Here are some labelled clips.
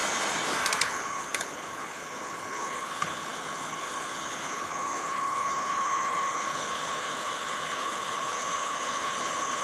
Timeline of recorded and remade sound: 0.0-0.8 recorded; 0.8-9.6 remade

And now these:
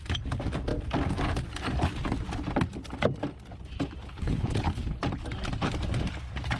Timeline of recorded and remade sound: 0.0-4.1 recorded; 4.1-5.0 remade; 5.0-6.6 recorded